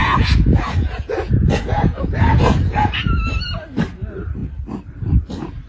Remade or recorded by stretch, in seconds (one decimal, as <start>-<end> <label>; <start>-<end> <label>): 0.0-3.2 remade; 3.2-5.7 recorded